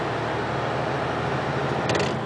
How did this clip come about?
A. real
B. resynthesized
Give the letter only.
A